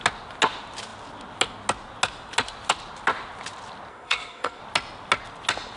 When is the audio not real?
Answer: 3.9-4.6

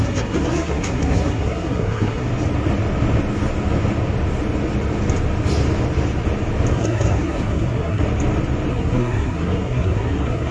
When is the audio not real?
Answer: 0.0-2.3; 6.7-8.0; 8.7-10.5

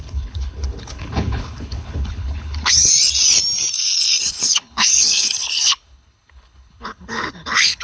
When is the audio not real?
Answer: 0.0-2.9; 4.2-7.8